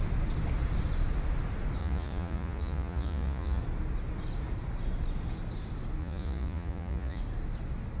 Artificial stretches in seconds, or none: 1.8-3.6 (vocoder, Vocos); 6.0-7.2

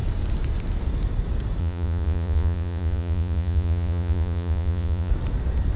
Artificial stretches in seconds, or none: 1.6-5.1 (vocoder, Vocos)

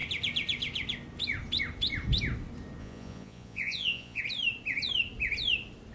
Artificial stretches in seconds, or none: 2.8-4.2 (vocoder, Vocos)

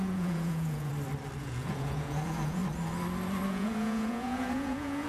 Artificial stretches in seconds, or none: 0.0-0.9 (vocoder, Vocos); 1.4-2.6; 3.5-5.1